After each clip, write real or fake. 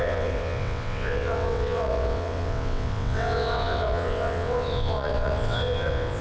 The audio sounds fake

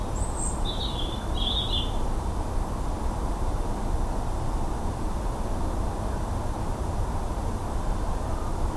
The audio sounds real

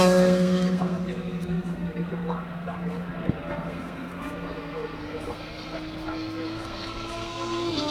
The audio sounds fake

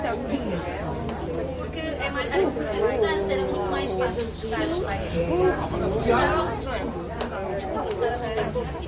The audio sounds real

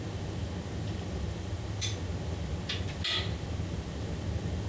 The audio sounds real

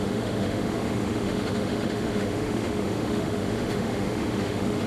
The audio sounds fake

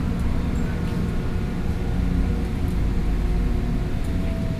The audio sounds real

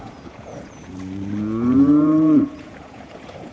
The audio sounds fake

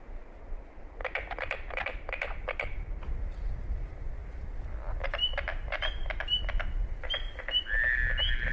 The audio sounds real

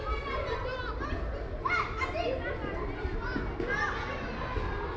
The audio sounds real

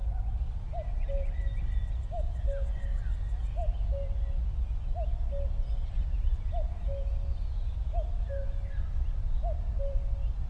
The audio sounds real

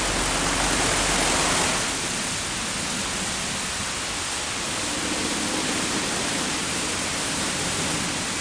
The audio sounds real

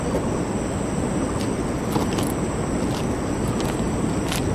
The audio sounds real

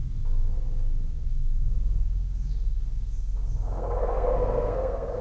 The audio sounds fake